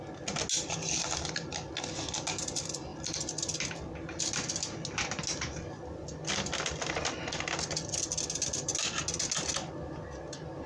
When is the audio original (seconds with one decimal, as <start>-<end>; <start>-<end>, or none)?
0.0-10.7